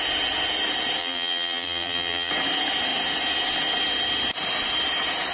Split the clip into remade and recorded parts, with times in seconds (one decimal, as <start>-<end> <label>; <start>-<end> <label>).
0.0-1.0 recorded; 1.0-2.3 remade; 2.3-5.3 recorded